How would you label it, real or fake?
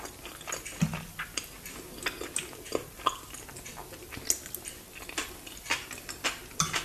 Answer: real